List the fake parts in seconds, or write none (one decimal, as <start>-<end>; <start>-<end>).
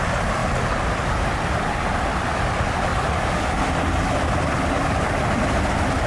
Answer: none